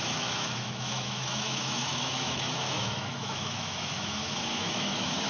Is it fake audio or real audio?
fake